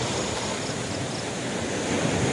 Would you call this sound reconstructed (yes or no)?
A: no